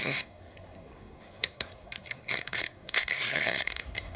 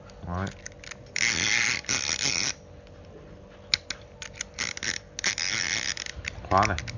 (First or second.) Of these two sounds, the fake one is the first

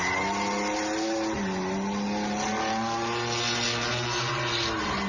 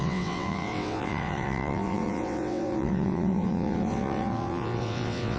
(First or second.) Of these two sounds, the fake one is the second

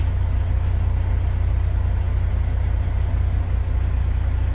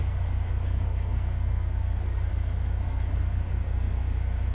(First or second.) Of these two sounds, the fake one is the second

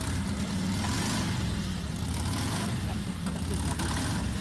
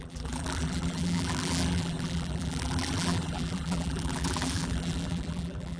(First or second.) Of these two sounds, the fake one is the second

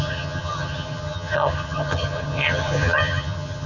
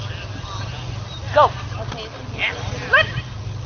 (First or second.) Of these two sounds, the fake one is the first